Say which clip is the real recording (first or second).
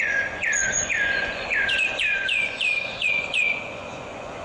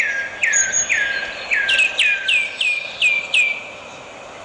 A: second